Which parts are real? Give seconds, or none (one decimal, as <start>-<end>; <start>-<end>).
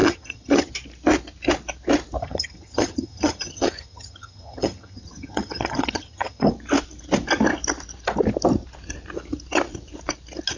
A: 0.7-2.2; 6.5-10.6